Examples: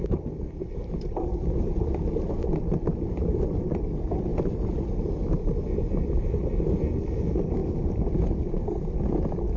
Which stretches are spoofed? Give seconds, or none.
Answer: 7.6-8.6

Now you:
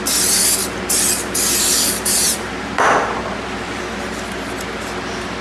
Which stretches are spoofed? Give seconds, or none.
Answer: 0.6-3.8